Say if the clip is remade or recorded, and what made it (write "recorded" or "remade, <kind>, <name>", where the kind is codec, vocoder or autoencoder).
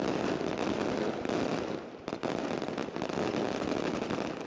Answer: recorded